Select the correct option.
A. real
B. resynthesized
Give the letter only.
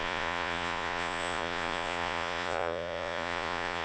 B